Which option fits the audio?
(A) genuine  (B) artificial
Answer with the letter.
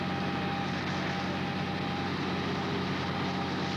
A